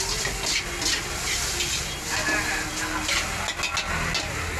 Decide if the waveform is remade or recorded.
recorded